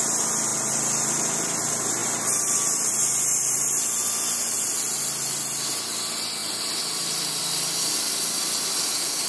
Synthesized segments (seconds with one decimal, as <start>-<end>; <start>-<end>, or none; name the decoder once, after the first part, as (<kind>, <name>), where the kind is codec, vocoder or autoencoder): 0.5-1.2 (vocoder, BigVGAN v2); 2.0-5.0; 6.4-7.4